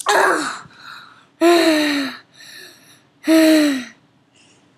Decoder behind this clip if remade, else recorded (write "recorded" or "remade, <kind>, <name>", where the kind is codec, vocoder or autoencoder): recorded